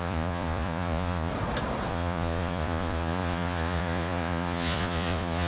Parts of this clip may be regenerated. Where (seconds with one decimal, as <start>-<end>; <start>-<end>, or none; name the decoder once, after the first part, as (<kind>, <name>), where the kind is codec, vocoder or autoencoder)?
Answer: 0.0-1.3 (vocoder, Vocos); 1.9-5.5